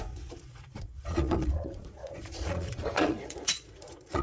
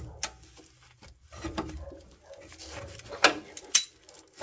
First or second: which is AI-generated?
first